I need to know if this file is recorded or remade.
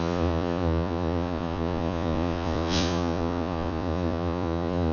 remade